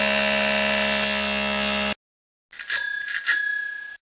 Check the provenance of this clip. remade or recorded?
recorded